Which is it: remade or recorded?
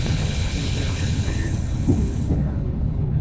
remade